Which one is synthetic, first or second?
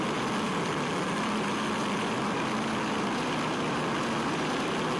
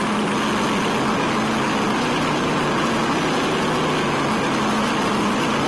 first